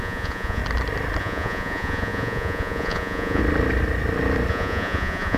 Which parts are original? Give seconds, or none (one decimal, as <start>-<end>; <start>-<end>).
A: 0.6-1.2; 3.4-4.5